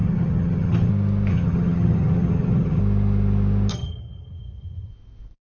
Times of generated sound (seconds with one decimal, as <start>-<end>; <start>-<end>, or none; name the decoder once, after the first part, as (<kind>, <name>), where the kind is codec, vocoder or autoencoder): 0.0-0.9 (vocoder, HiFi-GAN); 1.3-2.8; 3.7-4.9